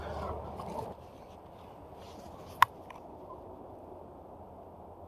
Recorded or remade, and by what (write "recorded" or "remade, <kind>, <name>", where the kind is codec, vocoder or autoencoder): recorded